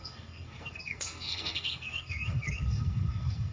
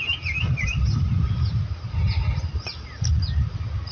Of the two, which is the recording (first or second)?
second